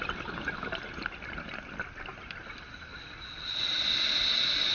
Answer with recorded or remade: recorded